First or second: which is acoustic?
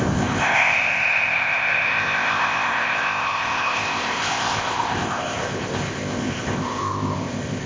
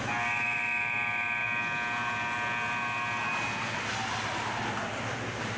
second